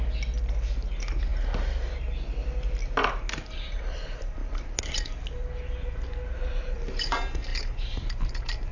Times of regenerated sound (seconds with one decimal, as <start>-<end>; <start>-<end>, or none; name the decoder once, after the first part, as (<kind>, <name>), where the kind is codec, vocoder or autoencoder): none